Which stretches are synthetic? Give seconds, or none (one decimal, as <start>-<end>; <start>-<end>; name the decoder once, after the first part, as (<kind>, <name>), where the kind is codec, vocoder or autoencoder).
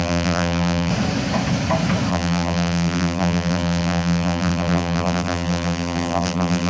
0.0-0.9 (vocoder, BigVGAN v2); 2.1-6.7